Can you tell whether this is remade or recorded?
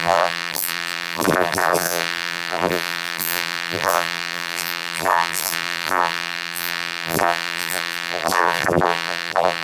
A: remade